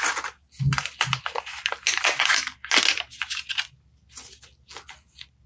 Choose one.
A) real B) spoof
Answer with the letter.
A